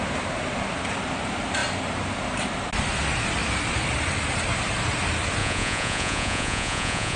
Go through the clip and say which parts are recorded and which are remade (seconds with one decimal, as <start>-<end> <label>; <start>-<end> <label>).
0.0-5.4 recorded; 5.4-7.2 remade